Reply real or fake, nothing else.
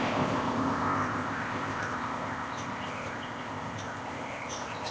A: fake